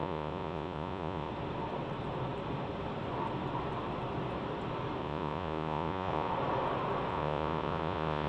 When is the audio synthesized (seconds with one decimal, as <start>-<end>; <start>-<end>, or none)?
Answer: 0.0-1.3; 5.0-6.3; 7.1-8.3